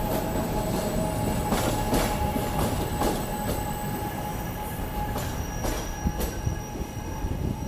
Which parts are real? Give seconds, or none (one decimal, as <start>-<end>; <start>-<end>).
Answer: 0.0-4.3; 5.5-7.7